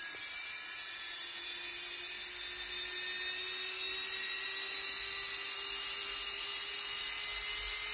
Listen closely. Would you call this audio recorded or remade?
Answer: recorded